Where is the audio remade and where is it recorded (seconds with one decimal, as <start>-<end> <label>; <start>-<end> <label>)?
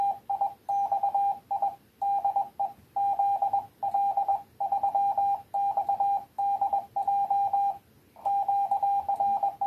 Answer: 0.0-9.7 recorded